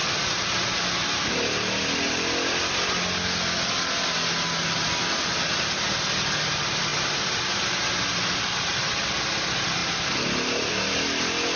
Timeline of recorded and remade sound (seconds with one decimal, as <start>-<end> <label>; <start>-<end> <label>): 0.0-11.6 recorded